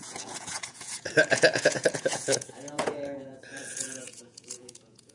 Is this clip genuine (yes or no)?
no